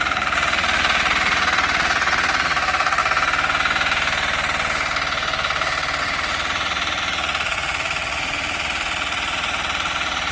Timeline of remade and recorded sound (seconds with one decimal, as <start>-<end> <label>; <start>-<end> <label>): 0.0-3.0 remade; 3.0-6.0 recorded; 6.0-10.3 remade